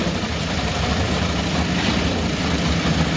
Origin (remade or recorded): remade